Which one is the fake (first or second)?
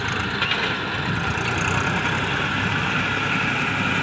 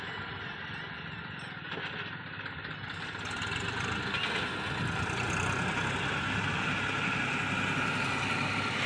first